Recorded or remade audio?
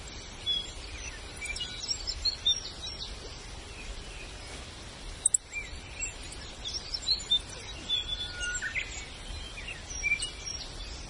recorded